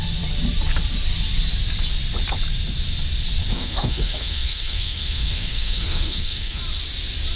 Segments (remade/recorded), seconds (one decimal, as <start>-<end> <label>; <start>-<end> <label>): 0.0-3.4 recorded; 3.4-6.6 remade; 6.6-7.4 recorded